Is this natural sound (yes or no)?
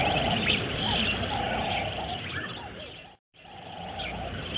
no